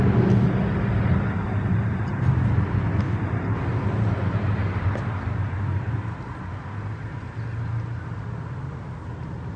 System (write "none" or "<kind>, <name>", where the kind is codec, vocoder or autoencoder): none